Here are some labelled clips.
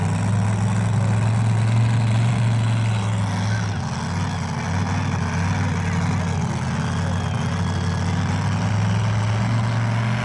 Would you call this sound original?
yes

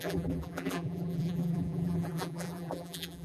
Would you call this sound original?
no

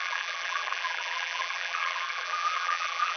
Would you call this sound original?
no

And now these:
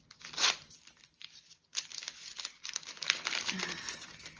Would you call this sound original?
no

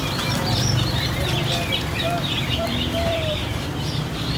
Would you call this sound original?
no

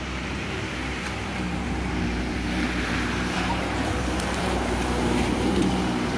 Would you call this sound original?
no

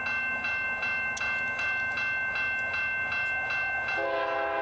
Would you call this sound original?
yes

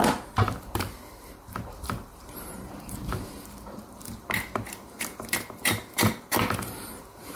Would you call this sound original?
no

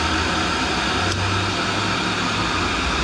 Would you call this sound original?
yes